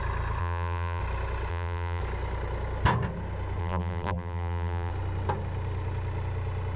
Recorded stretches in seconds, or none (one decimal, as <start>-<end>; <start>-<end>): 0.0-0.4; 1.0-1.5; 2.0-3.6; 4.9-6.8